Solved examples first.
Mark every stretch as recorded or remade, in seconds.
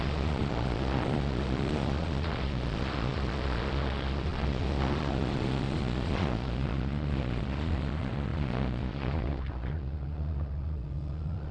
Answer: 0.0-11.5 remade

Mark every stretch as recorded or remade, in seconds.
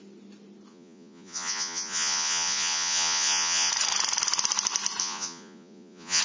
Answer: 0.0-0.7 recorded; 0.7-3.7 remade; 3.7-5.0 recorded; 5.0-6.2 remade